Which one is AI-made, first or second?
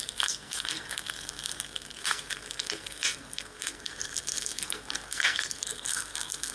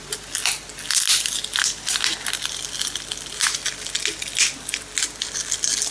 first